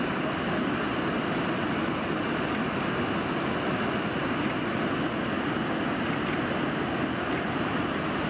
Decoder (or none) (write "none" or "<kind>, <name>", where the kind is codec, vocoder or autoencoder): none